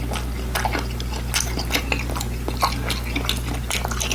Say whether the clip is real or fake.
real